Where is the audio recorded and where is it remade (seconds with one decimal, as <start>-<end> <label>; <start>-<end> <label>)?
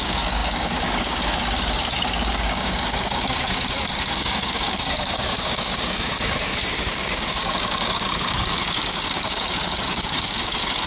0.0-10.9 remade